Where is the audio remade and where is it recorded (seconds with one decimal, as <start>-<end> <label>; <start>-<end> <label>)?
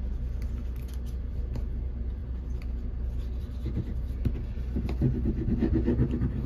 0.0-6.5 recorded